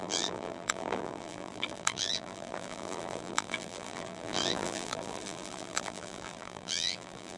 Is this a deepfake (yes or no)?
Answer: yes